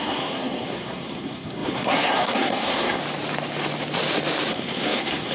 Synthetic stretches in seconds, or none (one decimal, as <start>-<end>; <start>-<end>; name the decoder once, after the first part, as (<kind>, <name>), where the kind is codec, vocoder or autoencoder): 0.0-3.0 (codec, SNAC); 4.5-5.3